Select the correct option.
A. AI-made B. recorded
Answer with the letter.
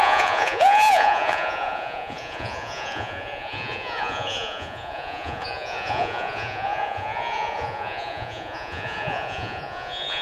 A